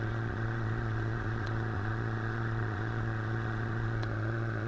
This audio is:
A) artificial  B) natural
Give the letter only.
A